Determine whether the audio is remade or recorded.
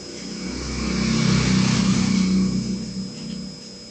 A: recorded